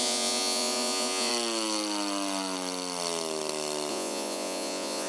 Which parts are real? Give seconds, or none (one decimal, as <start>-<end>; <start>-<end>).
1.3-3.9